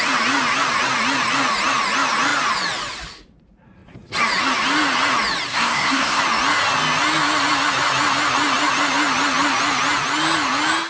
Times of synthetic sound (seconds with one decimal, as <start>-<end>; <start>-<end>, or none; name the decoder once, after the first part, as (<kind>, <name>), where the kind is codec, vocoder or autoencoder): 5.5-6.2 (codec, SNAC)